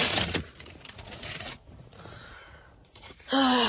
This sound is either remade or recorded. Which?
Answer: remade